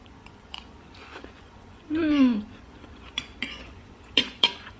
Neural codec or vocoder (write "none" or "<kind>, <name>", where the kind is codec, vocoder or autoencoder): vocoder, Vocos